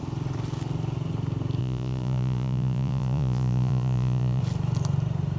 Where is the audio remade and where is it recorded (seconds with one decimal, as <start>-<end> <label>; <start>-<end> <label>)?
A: 0.0-1.6 recorded; 1.6-4.4 remade; 4.4-5.4 recorded